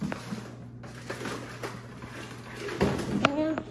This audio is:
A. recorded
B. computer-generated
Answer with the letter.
A